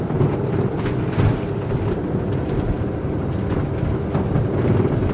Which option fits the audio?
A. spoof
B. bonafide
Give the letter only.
B